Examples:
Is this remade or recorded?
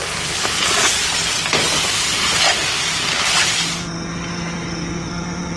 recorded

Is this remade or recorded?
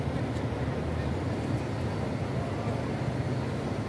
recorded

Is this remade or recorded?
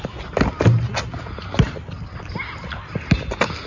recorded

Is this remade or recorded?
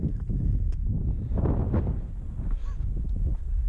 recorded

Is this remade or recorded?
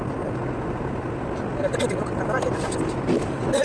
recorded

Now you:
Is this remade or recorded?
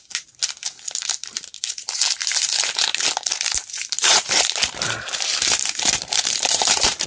remade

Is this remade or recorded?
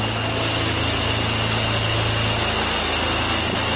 recorded